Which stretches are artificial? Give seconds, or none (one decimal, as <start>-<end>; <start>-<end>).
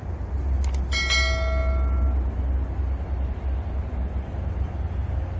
none